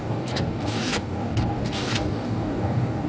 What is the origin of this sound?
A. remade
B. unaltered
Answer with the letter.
A